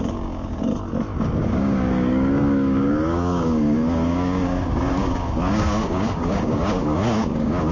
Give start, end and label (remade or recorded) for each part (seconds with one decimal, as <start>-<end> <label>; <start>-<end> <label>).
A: 0.0-0.7 remade; 0.7-1.2 recorded; 1.2-7.7 remade